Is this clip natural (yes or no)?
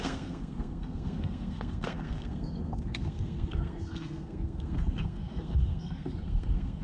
no